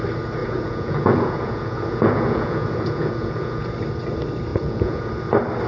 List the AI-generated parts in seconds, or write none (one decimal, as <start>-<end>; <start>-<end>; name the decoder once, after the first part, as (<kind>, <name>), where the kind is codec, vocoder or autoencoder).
0.4-3.7 (vocoder, Vocos); 4.5-5.1